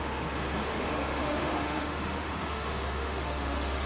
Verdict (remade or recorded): remade